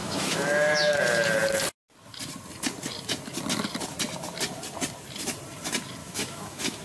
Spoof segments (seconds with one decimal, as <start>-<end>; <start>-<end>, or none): 0.0-1.0; 6.0-6.8